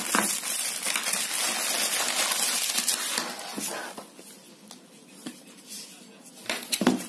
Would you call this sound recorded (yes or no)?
yes